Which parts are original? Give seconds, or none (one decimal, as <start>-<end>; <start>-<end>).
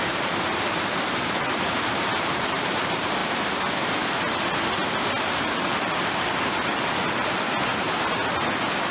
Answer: 2.5-8.9